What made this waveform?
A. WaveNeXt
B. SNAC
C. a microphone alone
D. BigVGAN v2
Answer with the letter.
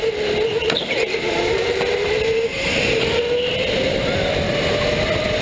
C